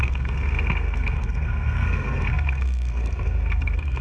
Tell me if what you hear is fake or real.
fake